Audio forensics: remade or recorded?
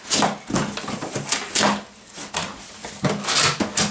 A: recorded